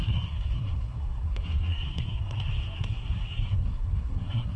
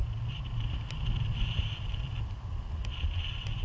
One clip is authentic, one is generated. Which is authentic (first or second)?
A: second